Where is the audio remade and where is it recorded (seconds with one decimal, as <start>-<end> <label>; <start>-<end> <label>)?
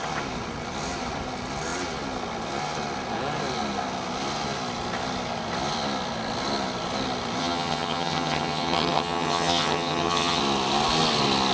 0.0-7.4 recorded; 7.4-10.4 remade; 10.4-11.5 recorded